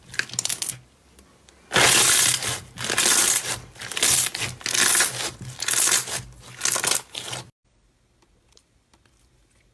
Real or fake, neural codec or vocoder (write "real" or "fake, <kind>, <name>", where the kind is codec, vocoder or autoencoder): real